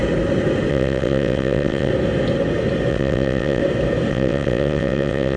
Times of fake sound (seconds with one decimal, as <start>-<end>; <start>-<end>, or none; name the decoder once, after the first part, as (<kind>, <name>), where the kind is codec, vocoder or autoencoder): 0.7-1.9 (vocoder, WaveNeXt); 2.9-3.6; 4.1-5.4